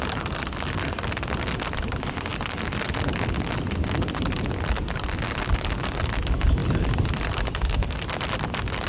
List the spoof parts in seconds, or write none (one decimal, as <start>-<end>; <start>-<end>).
7.5-8.0